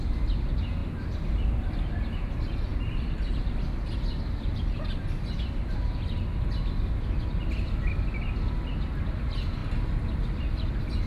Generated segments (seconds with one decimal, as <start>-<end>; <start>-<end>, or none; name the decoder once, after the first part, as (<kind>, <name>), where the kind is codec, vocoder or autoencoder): none